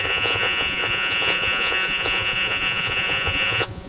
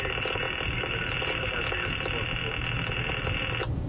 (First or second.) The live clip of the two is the second